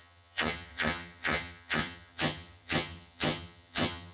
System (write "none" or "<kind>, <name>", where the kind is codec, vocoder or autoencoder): vocoder, HiFi-GAN